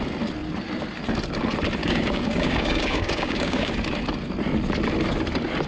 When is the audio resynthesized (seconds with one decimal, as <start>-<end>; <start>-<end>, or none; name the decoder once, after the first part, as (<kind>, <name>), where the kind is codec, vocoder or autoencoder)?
1.8-3.7 (codec, DAC)